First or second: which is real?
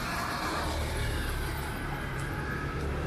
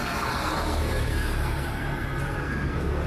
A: first